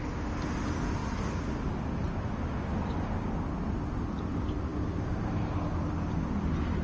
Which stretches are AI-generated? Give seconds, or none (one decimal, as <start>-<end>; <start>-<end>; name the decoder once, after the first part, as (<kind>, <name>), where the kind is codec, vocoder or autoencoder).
none

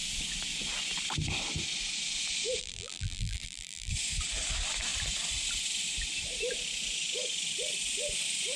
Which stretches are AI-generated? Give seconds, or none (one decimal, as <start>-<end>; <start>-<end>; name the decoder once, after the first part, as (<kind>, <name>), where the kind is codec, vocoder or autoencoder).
2.6-3.9 (vocoder, BigVGAN v2)

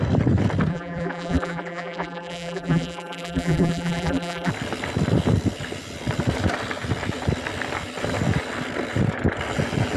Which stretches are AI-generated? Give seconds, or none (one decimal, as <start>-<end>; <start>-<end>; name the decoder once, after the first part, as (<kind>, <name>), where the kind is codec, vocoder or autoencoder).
0.7-4.5 (vocoder, BigVGAN v2)

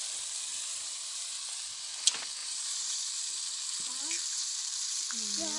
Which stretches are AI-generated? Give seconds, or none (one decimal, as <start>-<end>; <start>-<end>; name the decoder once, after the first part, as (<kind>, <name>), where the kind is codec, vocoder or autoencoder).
0.5-1.3 (vocoder, BigVGAN v2); 2.4-3.2; 4.3-5.0

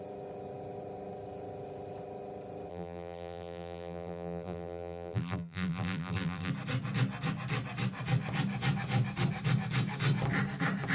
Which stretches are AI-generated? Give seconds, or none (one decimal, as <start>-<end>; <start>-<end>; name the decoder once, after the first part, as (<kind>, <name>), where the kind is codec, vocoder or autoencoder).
2.7-6.5 (vocoder, BigVGAN v2)

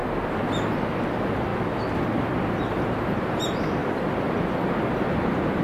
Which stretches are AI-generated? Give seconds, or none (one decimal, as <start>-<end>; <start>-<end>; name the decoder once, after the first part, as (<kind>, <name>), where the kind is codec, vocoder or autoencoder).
1.0-1.5 (vocoder, BigVGAN v2); 2.3-3.8; 4.5-5.6

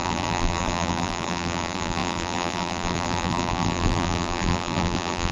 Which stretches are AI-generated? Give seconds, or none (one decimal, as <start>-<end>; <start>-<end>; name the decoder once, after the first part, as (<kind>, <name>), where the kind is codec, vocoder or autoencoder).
0.0-5.3 (vocoder, BigVGAN v2)

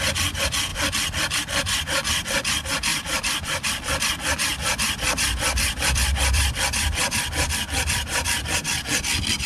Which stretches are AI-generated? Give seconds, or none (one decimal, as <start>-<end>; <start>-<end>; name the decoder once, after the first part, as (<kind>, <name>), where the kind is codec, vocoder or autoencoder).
0.7-1.4 (vocoder, BigVGAN v2); 2.9-4.0; 4.5-8.1